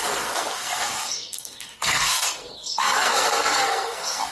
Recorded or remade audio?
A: remade